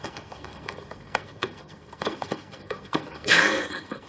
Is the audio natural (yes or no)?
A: no